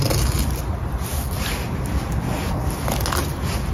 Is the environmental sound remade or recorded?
recorded